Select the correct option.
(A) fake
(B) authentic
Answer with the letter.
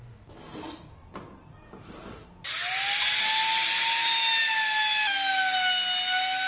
B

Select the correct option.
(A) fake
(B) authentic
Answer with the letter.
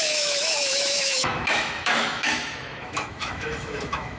A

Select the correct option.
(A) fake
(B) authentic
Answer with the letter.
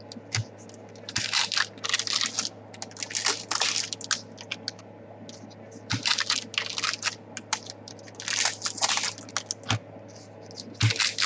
B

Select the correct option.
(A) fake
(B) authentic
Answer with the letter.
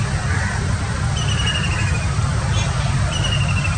B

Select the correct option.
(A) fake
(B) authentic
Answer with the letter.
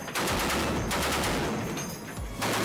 B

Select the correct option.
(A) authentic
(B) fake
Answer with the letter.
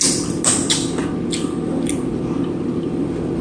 A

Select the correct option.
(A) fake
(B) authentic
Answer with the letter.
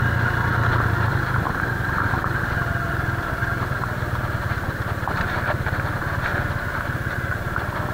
B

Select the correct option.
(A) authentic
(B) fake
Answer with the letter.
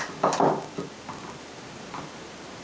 A